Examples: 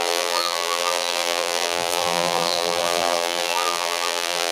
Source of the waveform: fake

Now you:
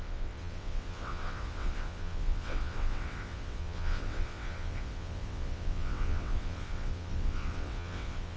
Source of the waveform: fake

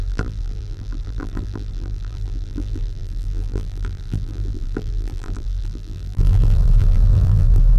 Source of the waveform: fake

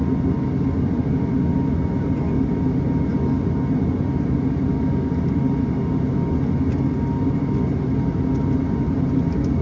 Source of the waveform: real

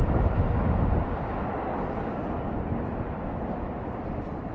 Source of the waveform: real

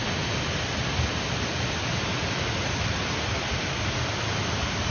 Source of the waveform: real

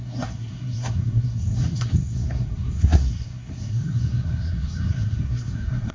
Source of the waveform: fake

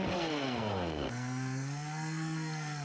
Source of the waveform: fake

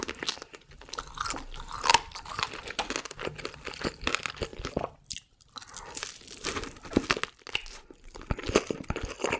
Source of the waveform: real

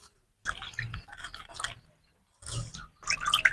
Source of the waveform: real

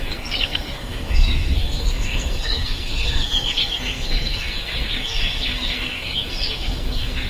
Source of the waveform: fake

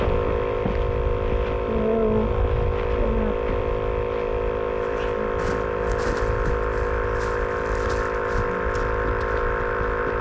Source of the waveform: real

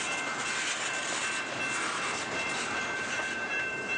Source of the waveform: real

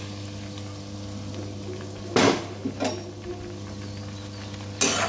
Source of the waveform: real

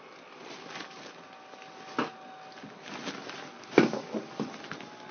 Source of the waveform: real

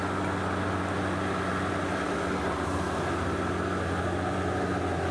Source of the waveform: real